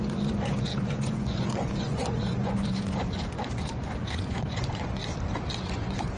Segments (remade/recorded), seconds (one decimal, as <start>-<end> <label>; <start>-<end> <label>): 0.0-5.0 remade; 5.0-5.6 recorded; 5.6-6.2 remade